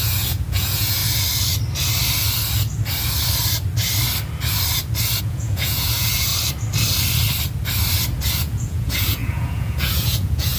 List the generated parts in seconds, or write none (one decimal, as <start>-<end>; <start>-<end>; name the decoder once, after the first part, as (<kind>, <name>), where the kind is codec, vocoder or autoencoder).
0.0-1.0 (vocoder, Vocos); 5.2-6.3; 8.4-10.6